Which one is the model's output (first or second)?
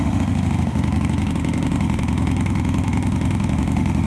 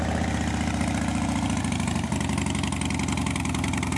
first